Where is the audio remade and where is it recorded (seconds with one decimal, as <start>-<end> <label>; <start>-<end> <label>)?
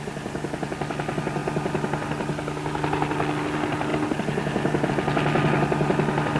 0.0-6.4 recorded